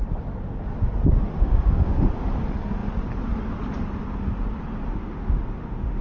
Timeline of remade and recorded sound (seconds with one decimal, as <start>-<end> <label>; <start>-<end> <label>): 0.0-1.3 recorded; 1.3-2.2 remade; 2.2-4.9 recorded; 4.9-6.0 remade